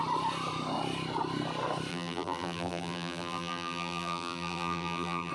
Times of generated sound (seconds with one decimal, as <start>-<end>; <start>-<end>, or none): 1.9-5.3